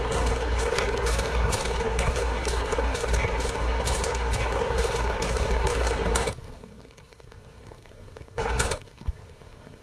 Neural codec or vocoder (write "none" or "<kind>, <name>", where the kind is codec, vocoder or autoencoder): codec, SNAC